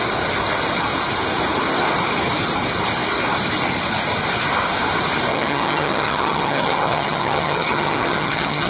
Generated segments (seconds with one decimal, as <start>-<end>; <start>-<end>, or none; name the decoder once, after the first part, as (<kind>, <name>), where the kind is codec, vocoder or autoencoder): 5.3-8.7 (vocoder, HiFi-GAN)